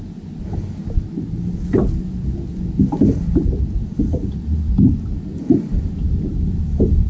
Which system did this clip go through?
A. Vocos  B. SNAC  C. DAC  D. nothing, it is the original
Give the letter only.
D